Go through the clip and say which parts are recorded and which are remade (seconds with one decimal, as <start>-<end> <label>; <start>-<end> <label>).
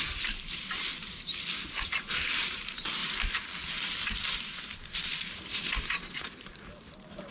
0.0-0.9 remade; 0.9-1.7 recorded; 1.7-3.0 remade; 3.0-5.4 recorded; 5.4-7.3 remade